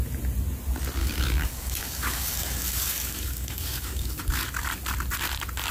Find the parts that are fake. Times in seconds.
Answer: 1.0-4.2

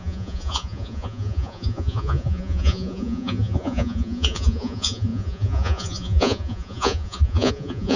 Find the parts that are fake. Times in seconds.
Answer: 0.0-8.0

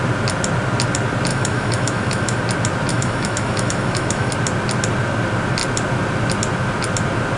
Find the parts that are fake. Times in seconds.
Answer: 1.3-2.4; 2.9-4.3

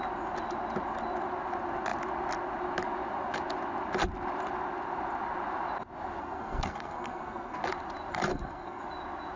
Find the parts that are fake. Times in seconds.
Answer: 6.2-7.6; 8.3-8.8